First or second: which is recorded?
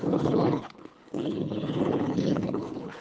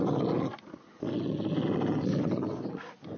second